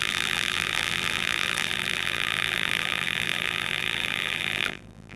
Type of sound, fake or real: fake